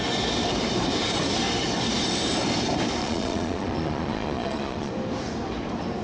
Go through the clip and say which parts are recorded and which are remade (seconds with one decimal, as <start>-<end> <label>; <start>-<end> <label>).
0.0-3.0 recorded; 3.0-4.9 remade; 4.9-6.0 recorded